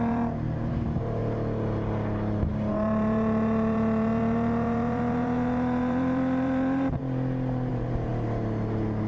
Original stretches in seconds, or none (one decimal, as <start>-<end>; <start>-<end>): 1.2-2.7; 7.0-7.7; 8.1-9.1